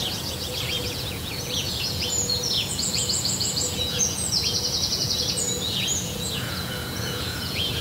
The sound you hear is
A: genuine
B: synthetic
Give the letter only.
B